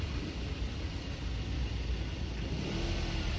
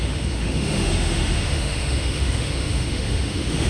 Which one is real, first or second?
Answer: first